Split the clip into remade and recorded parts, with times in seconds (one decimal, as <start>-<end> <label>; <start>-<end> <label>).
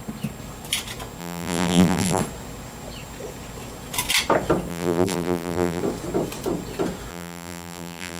0.0-1.2 recorded; 1.2-2.2 remade; 2.2-4.7 recorded; 4.7-5.8 remade; 5.8-7.1 recorded; 7.1-8.2 remade